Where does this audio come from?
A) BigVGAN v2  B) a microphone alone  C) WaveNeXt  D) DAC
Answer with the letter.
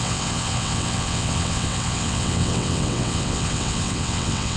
C